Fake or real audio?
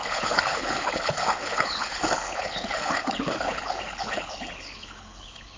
fake